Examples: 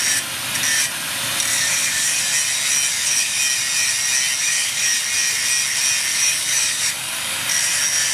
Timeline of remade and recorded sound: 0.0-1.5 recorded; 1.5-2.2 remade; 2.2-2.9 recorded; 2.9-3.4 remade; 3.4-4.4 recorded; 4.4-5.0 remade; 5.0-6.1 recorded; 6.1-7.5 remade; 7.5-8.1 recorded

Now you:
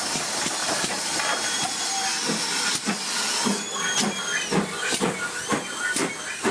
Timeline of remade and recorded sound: 0.0-6.5 recorded

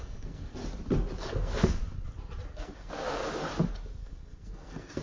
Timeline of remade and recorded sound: 0.0-0.6 remade; 0.6-1.2 recorded; 1.2-1.8 remade; 1.8-2.5 recorded; 2.5-3.2 remade; 3.2-4.0 recorded; 4.0-5.0 remade

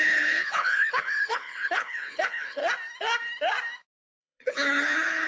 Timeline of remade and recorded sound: 0.0-2.6 remade; 2.6-4.2 recorded; 4.2-5.3 remade

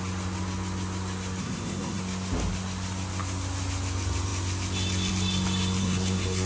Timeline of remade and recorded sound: 0.0-1.4 recorded; 1.4-2.0 remade; 2.0-5.8 recorded; 5.8-6.5 remade

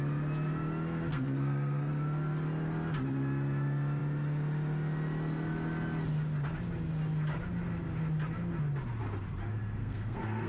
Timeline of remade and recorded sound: 0.0-1.1 recorded; 1.1-1.9 remade; 1.9-9.8 recorded; 9.8-10.5 remade

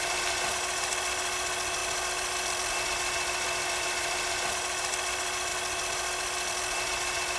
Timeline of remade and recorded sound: 0.0-7.4 recorded